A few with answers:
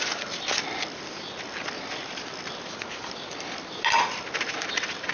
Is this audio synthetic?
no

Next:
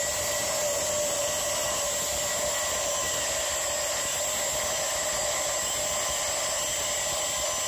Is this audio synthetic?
no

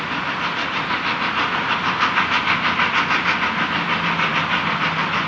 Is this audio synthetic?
no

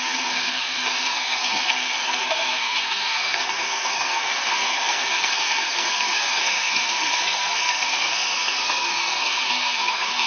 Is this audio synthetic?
yes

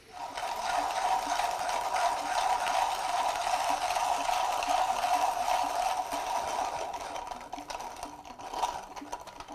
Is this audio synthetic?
no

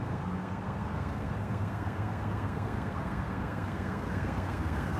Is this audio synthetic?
yes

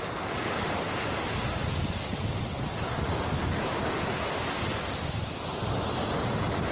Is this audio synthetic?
no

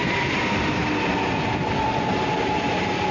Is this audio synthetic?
no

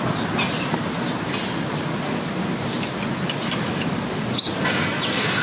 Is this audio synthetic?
no